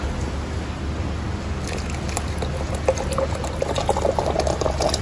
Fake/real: real